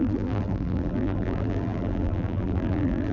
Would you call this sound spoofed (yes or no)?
yes